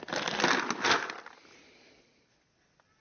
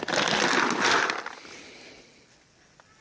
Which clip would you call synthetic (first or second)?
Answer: second